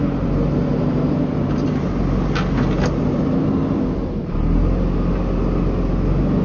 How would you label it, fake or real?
real